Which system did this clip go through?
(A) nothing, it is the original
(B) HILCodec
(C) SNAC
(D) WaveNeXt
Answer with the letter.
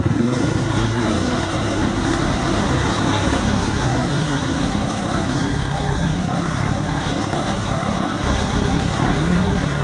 C